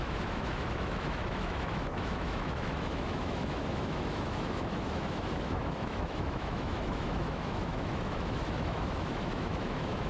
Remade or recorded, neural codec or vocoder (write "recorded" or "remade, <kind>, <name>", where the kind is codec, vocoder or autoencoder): remade, autoencoder, DAC-VAE